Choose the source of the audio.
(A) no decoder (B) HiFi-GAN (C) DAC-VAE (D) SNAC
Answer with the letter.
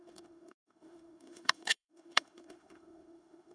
C